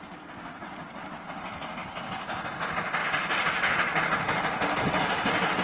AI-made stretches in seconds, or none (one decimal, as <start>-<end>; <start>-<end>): none